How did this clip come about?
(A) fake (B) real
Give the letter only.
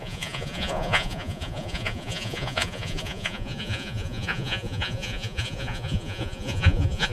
A